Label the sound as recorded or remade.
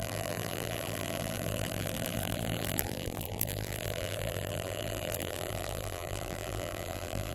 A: remade